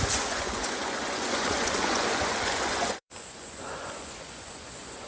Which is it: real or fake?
fake